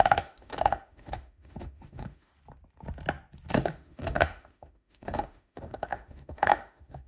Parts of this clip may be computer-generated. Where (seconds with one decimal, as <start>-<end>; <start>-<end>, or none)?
0.0-2.3; 3.5-7.1